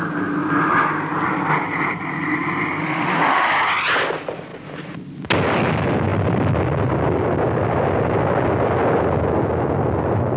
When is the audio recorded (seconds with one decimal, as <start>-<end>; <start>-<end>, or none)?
0.0-2.8; 3.5-10.4